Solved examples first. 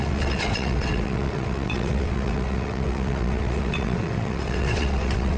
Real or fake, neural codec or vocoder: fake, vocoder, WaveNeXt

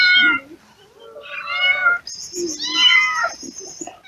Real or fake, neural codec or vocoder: real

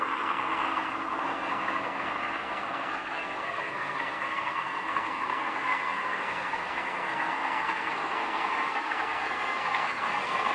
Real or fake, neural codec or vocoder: fake, codec, SNAC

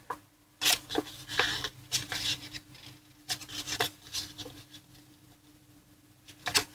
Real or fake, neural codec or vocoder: real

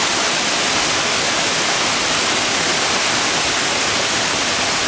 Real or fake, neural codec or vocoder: real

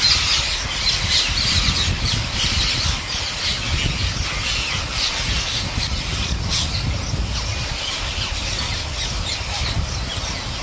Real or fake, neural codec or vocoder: real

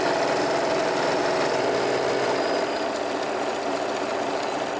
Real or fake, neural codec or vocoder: real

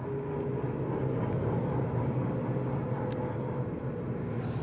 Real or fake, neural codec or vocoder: real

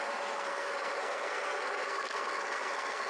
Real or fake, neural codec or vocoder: fake, codec, SNAC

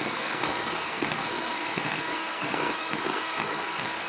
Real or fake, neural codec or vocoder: fake, codec, SNAC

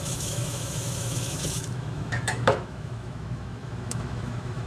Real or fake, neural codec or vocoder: fake, autoencoder, DAC-VAE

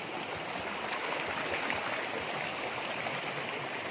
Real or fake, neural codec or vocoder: real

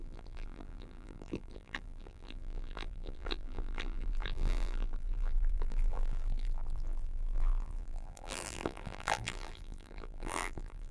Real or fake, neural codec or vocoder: fake, vocoder, BigVGAN v2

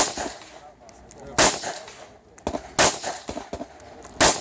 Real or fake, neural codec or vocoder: real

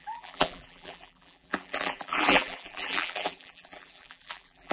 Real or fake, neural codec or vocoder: fake, vocoder, BigVGAN v2